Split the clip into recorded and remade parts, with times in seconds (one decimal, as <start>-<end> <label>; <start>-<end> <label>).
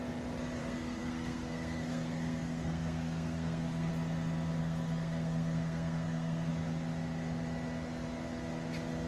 0.0-0.6 recorded; 0.6-3.9 remade; 3.9-4.6 recorded; 4.6-6.5 remade; 6.5-9.1 recorded